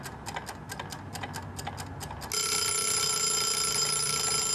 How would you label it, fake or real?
real